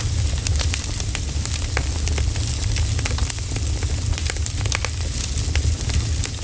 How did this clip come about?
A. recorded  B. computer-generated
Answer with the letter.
A